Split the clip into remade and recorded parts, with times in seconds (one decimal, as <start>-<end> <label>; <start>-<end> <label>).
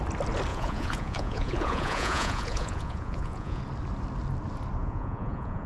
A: 0.0-0.5 recorded; 0.5-3.6 remade; 3.6-4.8 recorded; 4.8-5.7 remade